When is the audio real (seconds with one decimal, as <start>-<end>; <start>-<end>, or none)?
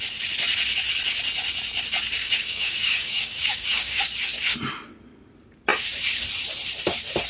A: 0.0-2.2; 4.0-7.3